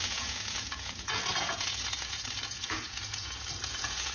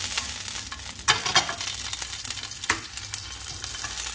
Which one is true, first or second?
second